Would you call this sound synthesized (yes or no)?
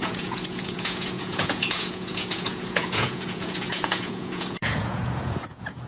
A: yes